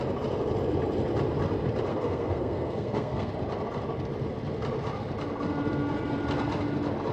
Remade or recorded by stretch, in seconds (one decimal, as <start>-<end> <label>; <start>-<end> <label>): 0.0-1.9 recorded; 1.9-3.3 remade; 3.3-7.1 recorded